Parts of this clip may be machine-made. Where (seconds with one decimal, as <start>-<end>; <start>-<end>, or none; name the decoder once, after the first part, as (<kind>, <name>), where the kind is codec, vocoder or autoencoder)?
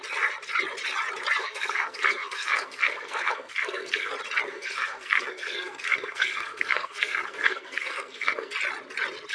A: 1.4-4.1 (codec, SNAC); 4.5-8.5